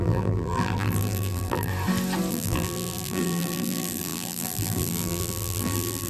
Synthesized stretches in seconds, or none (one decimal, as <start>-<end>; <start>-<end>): 0.0-1.7; 2.3-6.1